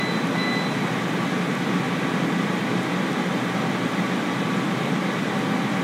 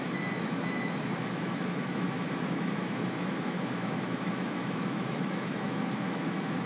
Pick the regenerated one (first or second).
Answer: second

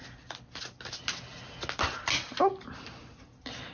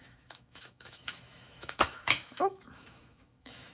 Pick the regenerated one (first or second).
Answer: second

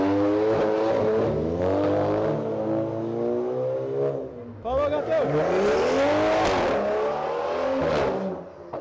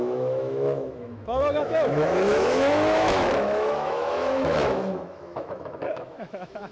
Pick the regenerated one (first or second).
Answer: second